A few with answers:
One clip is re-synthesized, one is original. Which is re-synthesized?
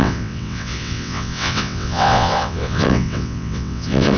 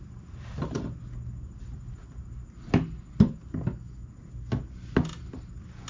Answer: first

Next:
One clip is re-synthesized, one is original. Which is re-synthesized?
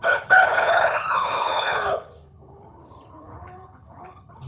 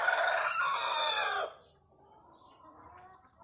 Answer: first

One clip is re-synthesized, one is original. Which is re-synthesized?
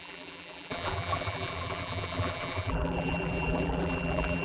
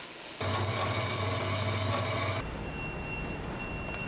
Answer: first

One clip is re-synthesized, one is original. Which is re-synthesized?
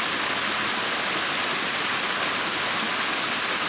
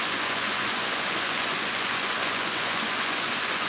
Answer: second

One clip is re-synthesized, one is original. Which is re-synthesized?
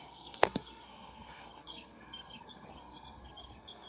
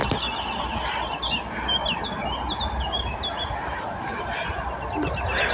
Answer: first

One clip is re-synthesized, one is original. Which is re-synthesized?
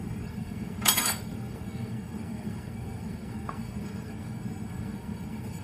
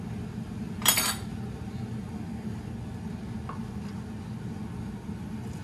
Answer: first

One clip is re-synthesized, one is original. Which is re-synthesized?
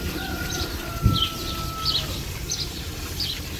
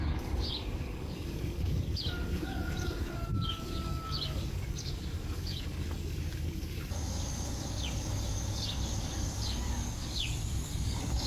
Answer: second